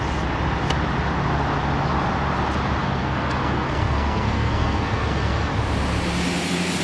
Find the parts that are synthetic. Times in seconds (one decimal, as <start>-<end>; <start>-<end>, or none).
2.8-5.5